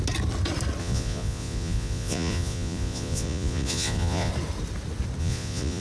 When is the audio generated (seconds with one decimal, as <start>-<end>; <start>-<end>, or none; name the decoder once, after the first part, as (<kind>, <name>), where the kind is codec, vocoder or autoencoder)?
0.8-4.3 (vocoder, Vocos); 5.2-5.8